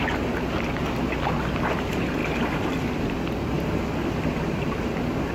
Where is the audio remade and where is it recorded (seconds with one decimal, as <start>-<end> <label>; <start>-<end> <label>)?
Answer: 0.0-5.3 recorded